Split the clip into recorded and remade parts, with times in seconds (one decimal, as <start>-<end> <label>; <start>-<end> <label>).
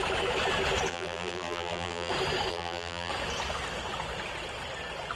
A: 0.0-0.9 recorded; 0.9-2.1 remade; 2.1-2.5 recorded; 2.5-3.1 remade; 3.1-5.2 recorded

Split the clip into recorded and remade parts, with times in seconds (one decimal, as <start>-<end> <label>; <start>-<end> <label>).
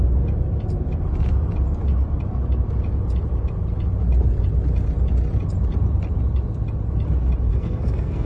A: 0.0-7.5 recorded; 7.5-8.3 remade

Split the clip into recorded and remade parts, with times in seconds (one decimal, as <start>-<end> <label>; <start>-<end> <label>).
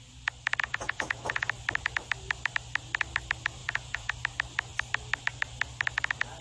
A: 0.0-0.6 recorded; 0.6-1.5 remade; 1.5-3.6 recorded; 3.6-4.1 remade; 4.1-6.4 recorded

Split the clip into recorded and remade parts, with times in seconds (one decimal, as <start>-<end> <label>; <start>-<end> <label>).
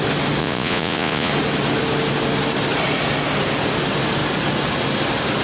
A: 0.0-0.4 recorded; 0.4-1.3 remade; 1.3-5.4 recorded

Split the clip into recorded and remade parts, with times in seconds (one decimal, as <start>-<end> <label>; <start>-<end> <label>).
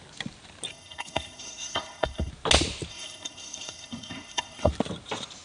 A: 0.0-0.7 recorded; 0.7-2.3 remade; 2.3-2.9 recorded; 2.9-4.7 remade; 4.7-5.4 recorded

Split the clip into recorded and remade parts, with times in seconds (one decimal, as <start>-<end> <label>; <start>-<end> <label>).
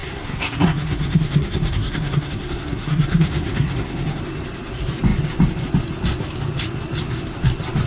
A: 0.0-4.2 remade; 4.2-7.9 recorded